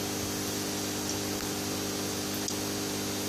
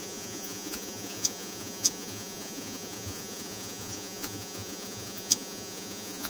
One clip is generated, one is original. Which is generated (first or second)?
second